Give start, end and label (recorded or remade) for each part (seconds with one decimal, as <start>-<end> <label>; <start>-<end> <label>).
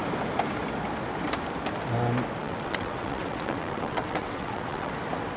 0.0-2.4 recorded; 2.4-4.9 remade; 4.9-5.4 recorded